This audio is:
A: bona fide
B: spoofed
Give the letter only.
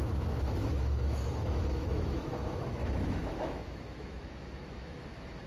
B